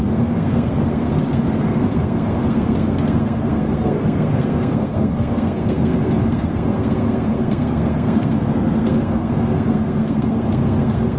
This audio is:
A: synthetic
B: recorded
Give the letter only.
A